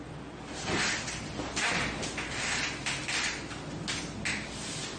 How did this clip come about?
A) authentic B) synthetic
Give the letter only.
A